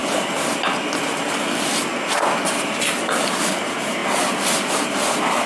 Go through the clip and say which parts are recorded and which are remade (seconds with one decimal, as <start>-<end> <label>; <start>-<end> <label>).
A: 0.0-5.5 recorded